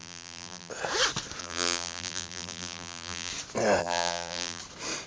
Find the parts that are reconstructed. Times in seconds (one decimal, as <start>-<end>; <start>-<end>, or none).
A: 0.0-0.7; 1.4-3.3; 3.8-4.6